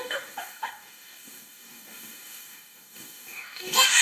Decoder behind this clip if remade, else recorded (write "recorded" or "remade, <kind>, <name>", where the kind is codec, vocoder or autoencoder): remade, codec, DAC